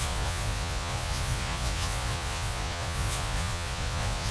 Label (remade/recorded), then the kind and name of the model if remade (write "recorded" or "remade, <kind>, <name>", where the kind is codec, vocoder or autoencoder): remade, vocoder, Vocos